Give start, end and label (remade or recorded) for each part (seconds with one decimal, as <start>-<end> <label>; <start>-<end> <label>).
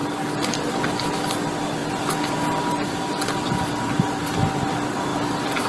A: 0.0-5.7 recorded